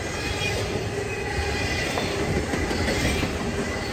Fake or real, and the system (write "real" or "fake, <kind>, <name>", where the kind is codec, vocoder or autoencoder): real